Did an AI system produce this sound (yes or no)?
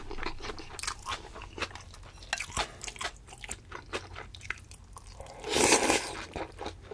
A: no